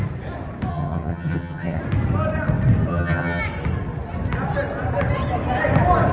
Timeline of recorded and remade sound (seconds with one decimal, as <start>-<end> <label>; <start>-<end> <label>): 0.0-0.7 recorded; 0.7-1.8 remade; 1.8-2.9 recorded; 2.9-3.4 remade; 3.4-6.1 recorded